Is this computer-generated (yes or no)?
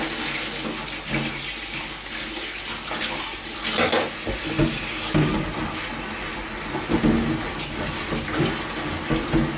no